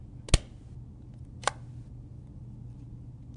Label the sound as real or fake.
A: real